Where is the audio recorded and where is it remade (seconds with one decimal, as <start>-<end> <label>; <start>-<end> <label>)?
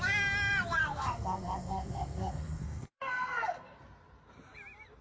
0.0-0.8 recorded; 0.8-3.8 remade; 3.8-5.0 recorded